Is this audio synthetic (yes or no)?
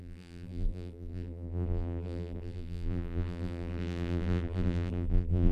yes